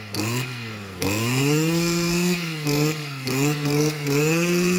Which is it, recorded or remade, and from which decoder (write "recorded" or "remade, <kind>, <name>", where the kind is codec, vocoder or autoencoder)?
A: remade, codec, SNAC